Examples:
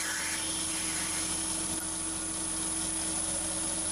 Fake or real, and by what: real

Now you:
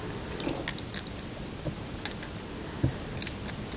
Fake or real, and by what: real